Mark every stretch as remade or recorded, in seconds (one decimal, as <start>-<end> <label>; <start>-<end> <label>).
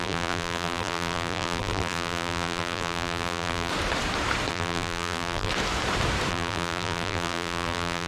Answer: 0.0-3.7 remade; 3.7-4.5 recorded; 4.5-5.5 remade; 5.5-6.3 recorded; 6.3-8.1 remade